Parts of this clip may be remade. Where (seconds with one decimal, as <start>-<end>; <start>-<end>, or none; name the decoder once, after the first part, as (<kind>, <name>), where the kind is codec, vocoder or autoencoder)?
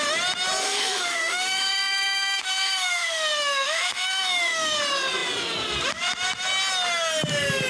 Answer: 0.6-4.8 (autoencoder, DAC-VAE)